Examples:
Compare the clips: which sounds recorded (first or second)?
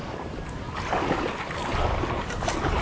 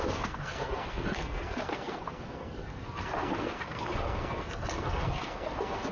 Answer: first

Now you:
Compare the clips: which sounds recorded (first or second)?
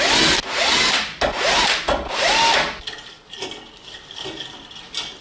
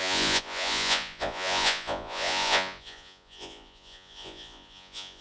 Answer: first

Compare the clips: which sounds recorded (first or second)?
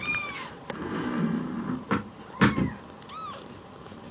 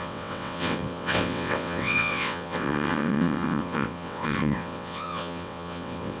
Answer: first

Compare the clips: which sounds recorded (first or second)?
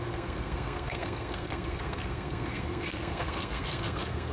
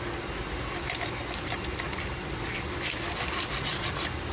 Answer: second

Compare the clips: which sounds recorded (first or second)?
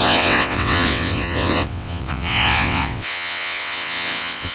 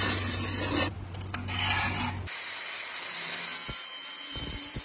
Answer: second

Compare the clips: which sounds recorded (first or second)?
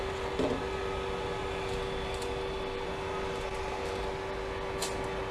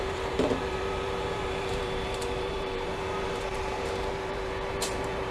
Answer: first